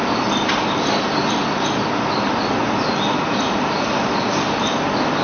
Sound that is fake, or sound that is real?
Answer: real